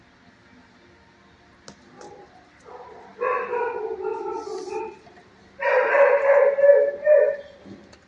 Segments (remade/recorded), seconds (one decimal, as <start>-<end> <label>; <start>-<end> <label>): 0.0-8.1 recorded